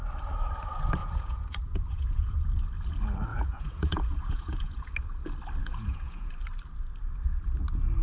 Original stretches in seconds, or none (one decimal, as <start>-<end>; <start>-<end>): 0.0-1.0; 2.4-3.3; 4.9-5.6; 6.3-8.0